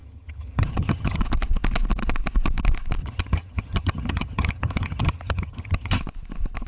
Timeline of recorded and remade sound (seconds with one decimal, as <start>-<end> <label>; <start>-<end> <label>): 0.0-1.2 remade; 1.2-3.0 recorded; 3.0-6.0 remade; 6.0-6.7 recorded